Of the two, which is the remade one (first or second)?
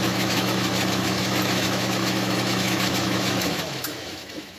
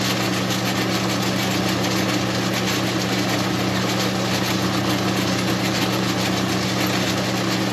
first